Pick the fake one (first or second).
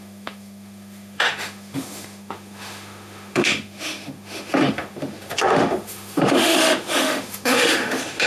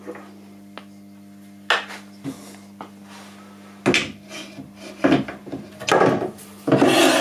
first